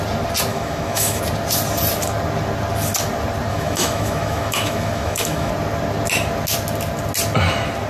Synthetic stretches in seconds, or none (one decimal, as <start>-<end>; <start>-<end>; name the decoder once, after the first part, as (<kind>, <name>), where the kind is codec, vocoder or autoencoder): 0.5-1.2 (autoencoder, DAC-VAE); 3.5-5.5